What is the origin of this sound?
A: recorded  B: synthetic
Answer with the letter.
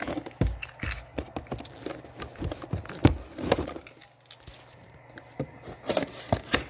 A